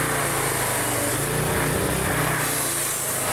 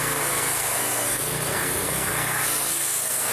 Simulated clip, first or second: second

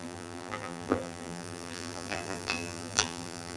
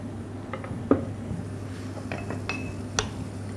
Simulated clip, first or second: first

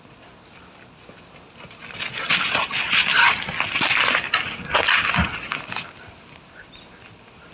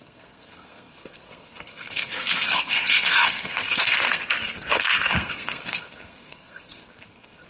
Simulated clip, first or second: second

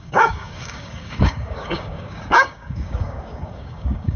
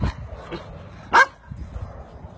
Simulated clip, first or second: first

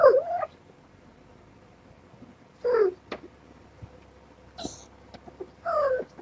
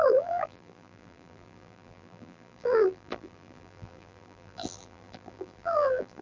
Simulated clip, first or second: second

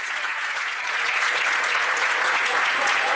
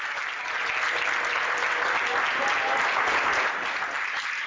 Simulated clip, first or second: first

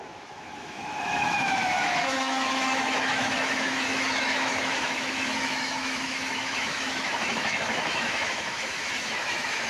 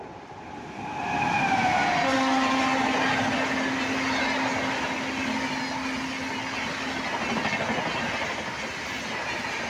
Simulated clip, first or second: first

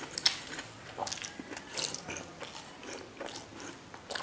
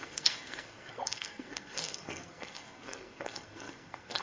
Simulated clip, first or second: second